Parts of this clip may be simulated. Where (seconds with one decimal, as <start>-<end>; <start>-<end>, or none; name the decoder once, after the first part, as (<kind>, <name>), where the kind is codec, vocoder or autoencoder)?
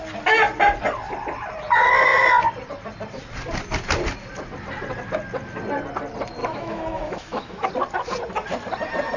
6.4-7.7 (autoencoder, DAC-VAE)